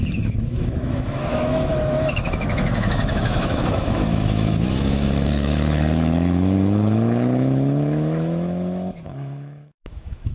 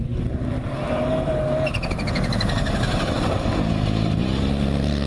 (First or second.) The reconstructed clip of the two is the first